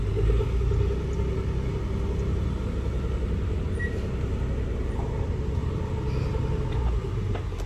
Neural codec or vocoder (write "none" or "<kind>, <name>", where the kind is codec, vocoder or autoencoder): none